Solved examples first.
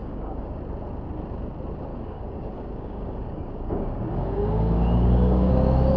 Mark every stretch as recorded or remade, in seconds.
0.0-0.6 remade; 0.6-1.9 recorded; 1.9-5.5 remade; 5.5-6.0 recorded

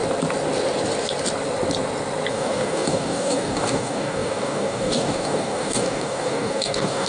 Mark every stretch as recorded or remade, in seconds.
0.0-2.3 recorded; 2.3-7.1 remade

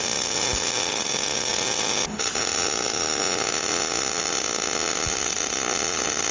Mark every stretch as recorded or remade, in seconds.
0.0-6.3 remade

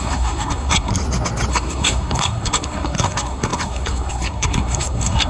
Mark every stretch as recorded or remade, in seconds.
0.0-0.9 remade; 0.9-1.5 recorded; 1.5-5.3 remade

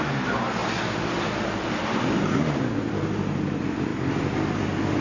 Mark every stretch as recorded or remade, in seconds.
0.0-5.0 recorded